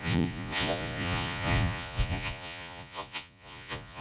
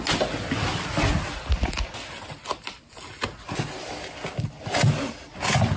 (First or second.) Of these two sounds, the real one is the second